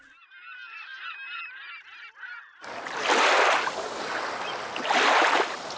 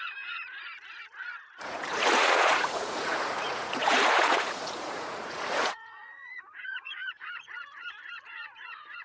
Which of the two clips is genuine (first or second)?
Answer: first